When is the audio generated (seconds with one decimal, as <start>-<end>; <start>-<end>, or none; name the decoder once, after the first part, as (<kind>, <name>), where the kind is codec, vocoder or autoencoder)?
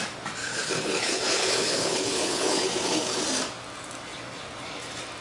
0.4-3.2 (codec, HILCodec)